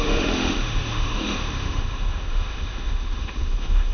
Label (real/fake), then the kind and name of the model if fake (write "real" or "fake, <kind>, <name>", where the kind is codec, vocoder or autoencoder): fake, autoencoder, DAC-VAE